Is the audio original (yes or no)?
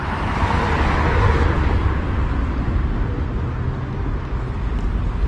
yes